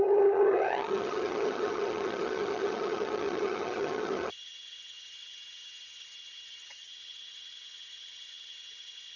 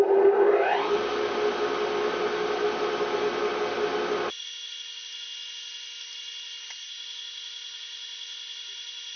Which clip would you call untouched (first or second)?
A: second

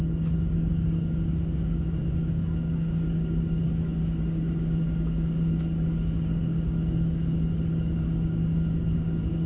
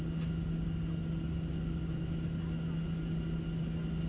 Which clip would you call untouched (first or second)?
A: second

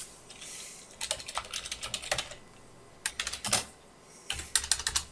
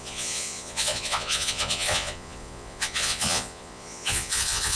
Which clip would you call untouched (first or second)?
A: first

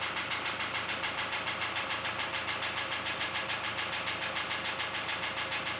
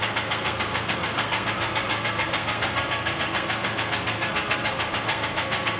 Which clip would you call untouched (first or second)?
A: first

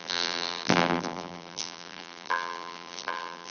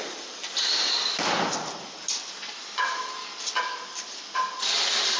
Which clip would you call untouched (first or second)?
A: second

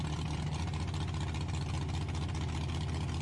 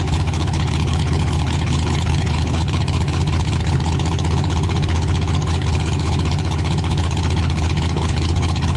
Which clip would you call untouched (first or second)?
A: first